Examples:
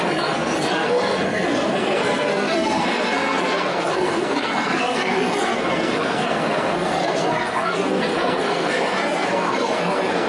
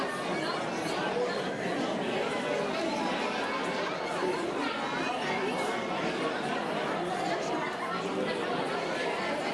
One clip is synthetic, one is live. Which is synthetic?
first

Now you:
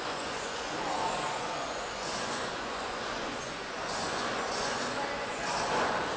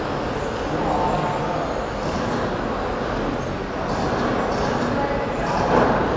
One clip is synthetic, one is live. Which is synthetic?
first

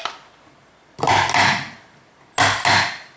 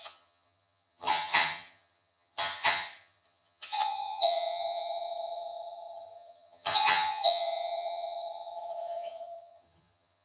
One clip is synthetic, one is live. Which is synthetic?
second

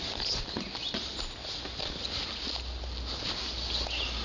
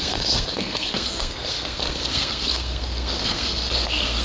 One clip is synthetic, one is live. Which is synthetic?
second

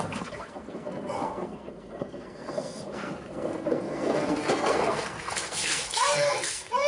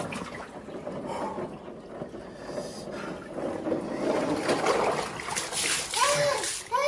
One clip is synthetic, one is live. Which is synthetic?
first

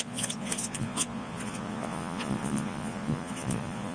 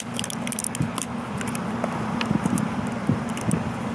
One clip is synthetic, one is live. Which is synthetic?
first